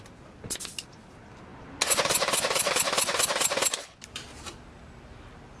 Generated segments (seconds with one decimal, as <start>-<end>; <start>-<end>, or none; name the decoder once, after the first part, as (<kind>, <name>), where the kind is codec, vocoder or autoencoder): none